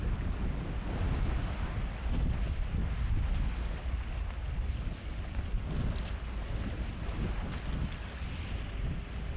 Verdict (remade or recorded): recorded